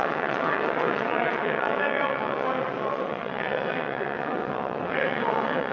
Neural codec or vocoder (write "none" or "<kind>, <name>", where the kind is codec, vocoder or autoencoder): vocoder, WaveNeXt